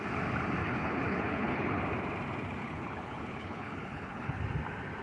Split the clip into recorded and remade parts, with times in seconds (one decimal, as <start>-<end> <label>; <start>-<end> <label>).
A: 0.0-0.6 recorded; 0.6-1.8 remade; 1.8-2.6 recorded; 2.6-4.4 remade; 4.4-5.0 recorded